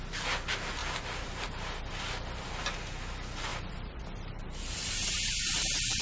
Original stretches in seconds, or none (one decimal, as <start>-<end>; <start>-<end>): 0.0-0.8; 2.5-3.5